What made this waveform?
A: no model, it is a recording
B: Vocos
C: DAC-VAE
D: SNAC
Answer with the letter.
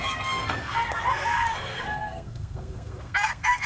D